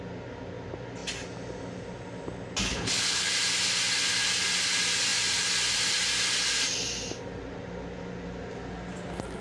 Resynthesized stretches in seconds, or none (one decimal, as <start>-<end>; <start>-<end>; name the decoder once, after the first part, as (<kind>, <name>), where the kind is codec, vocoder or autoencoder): 2.7-3.3 (codec, HILCodec)